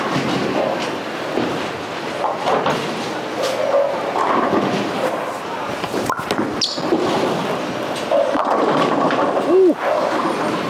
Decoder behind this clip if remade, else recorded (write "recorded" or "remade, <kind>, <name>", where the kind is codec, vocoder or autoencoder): recorded